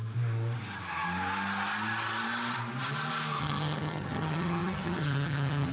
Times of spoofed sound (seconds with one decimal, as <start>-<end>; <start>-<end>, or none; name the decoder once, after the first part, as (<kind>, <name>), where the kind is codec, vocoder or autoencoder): 3.4-5.7 (vocoder, HiFi-GAN)